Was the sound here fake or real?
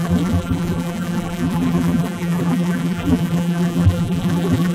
fake